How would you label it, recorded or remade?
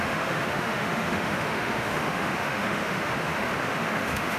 remade